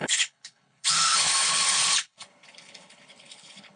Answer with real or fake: fake